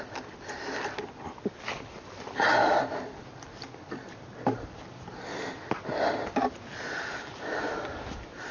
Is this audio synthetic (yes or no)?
no